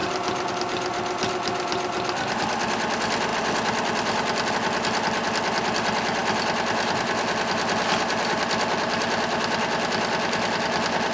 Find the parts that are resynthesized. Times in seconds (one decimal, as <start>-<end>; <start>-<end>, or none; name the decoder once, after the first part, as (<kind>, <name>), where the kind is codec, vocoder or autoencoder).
0.0-0.5 (vocoder, BigVGAN v2); 3.3-4.5